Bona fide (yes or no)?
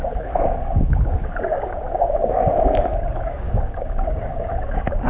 no